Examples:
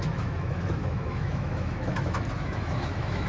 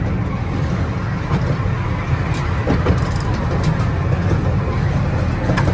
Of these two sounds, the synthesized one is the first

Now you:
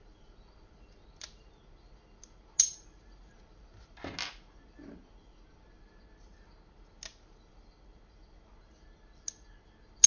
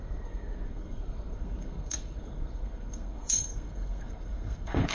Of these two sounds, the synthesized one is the second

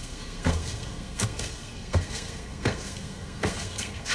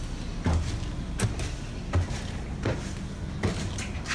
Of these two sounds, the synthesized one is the first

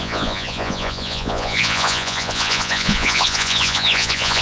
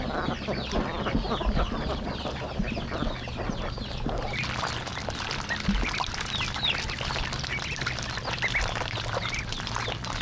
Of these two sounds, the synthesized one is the first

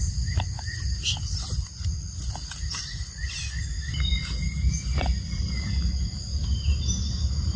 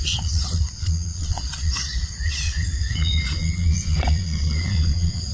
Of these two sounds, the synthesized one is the second